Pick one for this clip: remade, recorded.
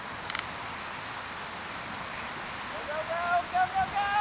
recorded